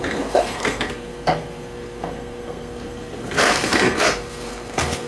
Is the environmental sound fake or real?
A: fake